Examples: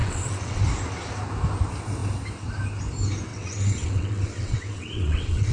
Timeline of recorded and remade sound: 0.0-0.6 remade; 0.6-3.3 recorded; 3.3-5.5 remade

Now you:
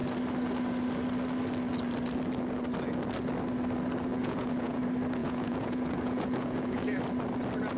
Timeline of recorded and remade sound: 0.0-4.1 recorded; 4.1-4.8 remade; 4.8-5.2 recorded; 5.2-7.0 remade; 7.0-7.8 recorded

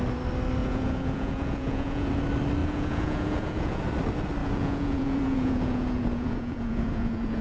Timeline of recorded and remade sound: 0.0-0.6 recorded; 0.6-2.1 remade; 2.1-2.6 recorded; 2.6-3.8 remade; 3.8-4.4 recorded; 4.4-7.4 remade

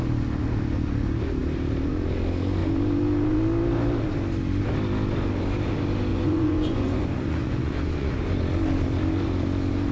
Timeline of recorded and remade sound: 0.0-6.1 recorded; 6.1-8.1 remade; 8.1-9.9 recorded

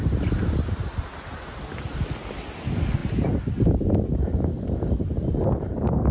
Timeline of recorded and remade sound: 0.0-6.1 recorded

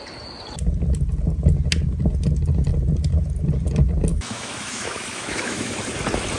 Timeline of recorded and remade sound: 0.0-4.1 recorded; 4.1-5.7 remade; 5.7-6.4 recorded